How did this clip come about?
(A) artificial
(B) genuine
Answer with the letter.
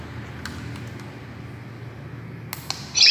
B